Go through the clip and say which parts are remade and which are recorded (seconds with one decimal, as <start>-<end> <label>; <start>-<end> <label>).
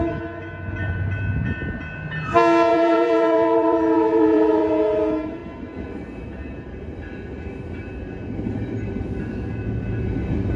0.0-2.7 recorded; 2.7-4.7 remade; 4.7-10.6 recorded